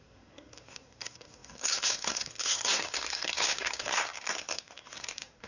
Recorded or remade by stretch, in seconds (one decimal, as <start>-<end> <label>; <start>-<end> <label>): 0.0-5.5 remade

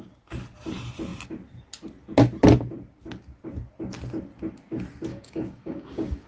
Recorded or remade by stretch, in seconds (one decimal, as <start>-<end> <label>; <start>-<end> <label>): 0.0-5.1 recorded; 5.1-6.3 remade

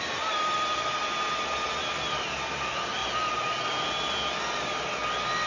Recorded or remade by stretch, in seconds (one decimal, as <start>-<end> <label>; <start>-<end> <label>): 0.0-5.5 recorded